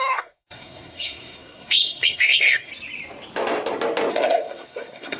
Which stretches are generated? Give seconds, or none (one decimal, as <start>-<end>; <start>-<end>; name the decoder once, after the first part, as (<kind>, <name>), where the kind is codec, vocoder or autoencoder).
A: 0.0-2.7 (codec, SNAC); 4.1-5.2